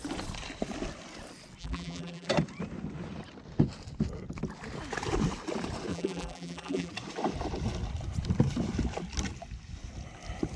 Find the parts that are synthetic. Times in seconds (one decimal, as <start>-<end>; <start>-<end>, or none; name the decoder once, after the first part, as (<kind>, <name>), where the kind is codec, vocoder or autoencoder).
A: 1.6-2.3 (vocoder, BigVGAN v2); 5.9-6.9